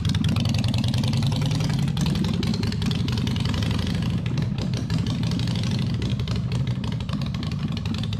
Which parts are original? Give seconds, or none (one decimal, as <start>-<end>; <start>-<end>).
0.0-2.5; 3.0-6.1; 7.6-8.2